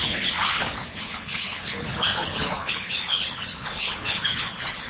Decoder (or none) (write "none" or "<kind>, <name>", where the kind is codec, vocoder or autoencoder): codec, HILCodec